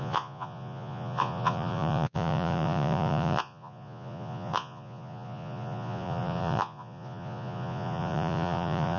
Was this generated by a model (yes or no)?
yes